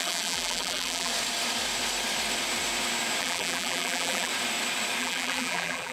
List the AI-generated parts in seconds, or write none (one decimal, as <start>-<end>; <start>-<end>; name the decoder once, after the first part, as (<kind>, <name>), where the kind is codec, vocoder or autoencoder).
0.0-1.1 (vocoder, BigVGAN v2); 3.2-4.3; 5.0-5.9